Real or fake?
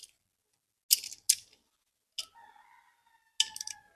real